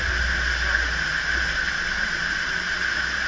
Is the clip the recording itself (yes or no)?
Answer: yes